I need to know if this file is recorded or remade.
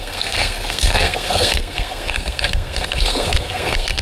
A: remade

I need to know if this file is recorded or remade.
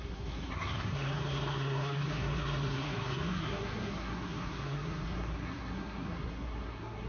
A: remade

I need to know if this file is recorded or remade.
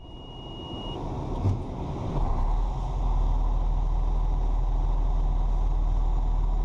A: recorded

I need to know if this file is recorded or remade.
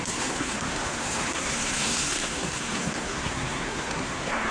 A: remade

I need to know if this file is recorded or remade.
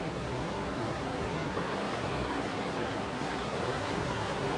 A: remade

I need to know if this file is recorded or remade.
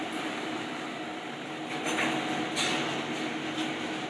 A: recorded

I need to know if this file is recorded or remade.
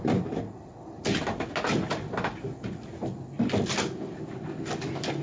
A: recorded